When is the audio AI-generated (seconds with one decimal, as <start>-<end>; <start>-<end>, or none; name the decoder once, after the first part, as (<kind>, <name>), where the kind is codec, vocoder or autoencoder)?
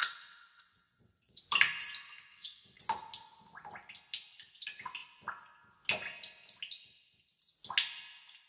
0.0-1.4 (vocoder, WaveNeXt); 2.3-2.8